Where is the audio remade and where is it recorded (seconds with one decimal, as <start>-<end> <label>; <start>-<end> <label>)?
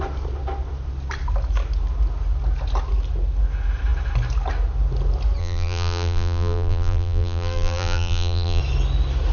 0.0-5.4 recorded; 5.4-8.6 remade; 8.6-9.3 recorded